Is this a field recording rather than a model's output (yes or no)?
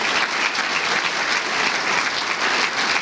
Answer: yes